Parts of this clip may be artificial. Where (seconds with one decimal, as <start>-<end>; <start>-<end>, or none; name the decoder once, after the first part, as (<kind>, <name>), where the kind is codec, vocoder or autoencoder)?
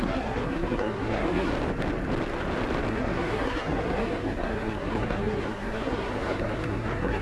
0.0-1.5 (codec, SNAC); 2.9-7.2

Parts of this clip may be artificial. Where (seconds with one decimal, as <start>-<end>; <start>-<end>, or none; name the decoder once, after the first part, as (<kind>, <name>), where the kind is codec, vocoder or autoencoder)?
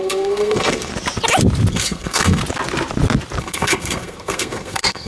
0.0-0.9 (codec, SNAC); 1.7-2.4; 3.4-5.1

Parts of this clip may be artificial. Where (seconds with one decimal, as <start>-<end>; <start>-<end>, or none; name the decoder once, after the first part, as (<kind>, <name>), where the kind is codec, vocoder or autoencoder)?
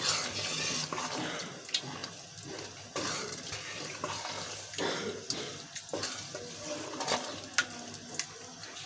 none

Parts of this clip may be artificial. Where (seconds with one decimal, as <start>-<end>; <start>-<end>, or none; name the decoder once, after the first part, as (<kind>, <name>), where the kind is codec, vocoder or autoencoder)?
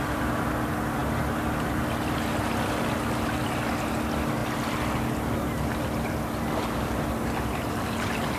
none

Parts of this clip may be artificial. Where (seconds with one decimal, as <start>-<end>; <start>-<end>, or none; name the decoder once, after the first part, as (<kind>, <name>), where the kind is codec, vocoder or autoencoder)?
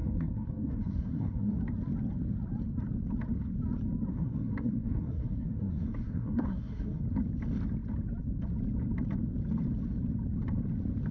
0.0-1.6 (codec, SNAC); 4.1-7.0